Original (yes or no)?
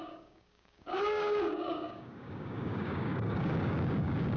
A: no